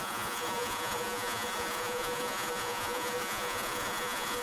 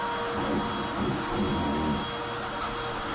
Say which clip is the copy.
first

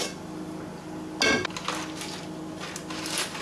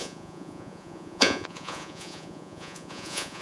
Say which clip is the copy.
second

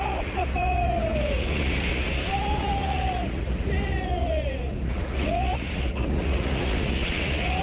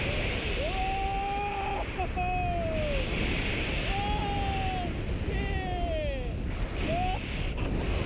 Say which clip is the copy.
first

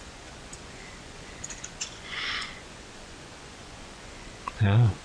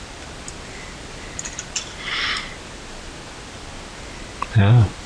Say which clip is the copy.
first